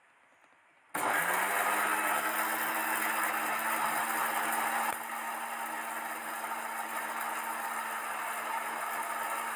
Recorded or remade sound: recorded